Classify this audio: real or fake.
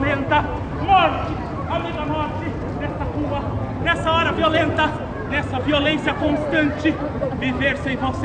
real